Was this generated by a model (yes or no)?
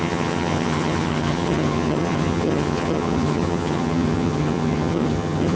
yes